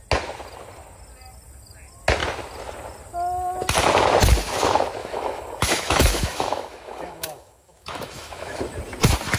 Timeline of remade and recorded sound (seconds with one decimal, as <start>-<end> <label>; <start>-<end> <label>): 0.0-5.0 recorded; 5.0-8.6 remade; 8.6-9.4 recorded